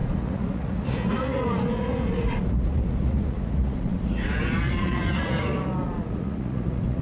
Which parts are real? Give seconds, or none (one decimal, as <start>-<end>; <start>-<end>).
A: none